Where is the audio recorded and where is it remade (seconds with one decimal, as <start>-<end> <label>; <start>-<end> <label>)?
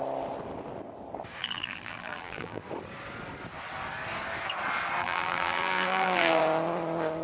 0.0-1.4 recorded; 1.4-2.6 remade; 2.6-5.0 recorded; 5.0-6.4 remade; 6.4-7.2 recorded